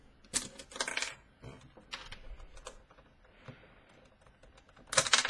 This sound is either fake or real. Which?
real